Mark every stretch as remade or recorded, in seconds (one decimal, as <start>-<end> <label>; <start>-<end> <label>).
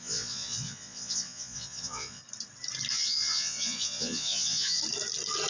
0.0-2.2 remade; 2.2-2.9 recorded; 2.9-4.8 remade; 4.8-5.5 recorded